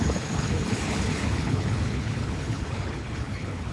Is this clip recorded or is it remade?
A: remade